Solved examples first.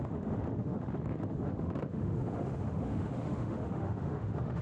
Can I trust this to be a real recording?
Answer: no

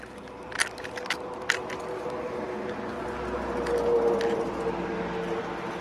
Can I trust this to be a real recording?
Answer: yes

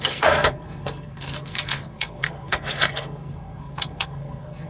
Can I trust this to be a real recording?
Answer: no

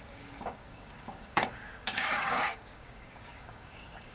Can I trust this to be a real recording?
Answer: no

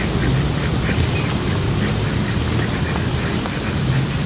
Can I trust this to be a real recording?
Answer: yes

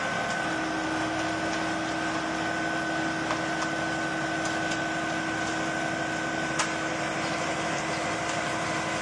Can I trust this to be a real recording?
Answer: yes